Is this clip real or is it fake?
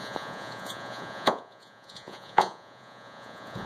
fake